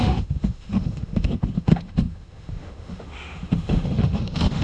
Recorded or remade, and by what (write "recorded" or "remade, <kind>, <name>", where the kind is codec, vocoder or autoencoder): remade, autoencoder, DAC-VAE